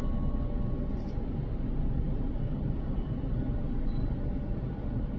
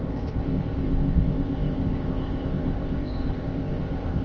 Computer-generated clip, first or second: second